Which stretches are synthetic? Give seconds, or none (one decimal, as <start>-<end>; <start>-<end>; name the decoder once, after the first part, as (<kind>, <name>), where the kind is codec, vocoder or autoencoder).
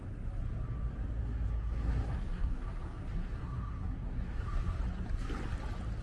1.2-4.8 (codec, SNAC)